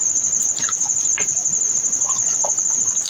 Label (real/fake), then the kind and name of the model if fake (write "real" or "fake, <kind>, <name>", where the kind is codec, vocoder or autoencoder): real